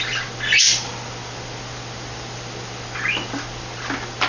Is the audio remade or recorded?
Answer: recorded